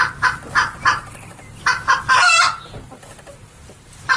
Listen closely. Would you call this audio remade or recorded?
recorded